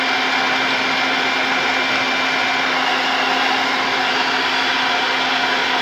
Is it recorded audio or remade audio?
recorded